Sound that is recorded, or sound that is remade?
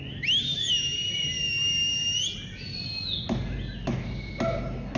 recorded